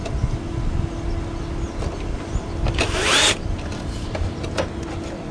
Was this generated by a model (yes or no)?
no